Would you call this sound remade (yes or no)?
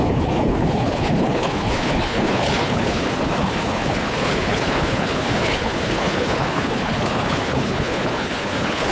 yes